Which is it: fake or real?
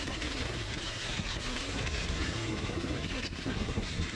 fake